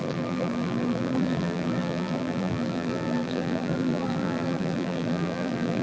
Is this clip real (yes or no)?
no